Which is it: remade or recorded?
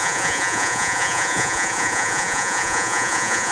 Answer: remade